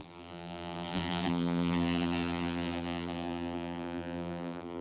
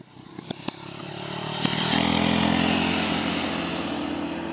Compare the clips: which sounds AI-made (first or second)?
first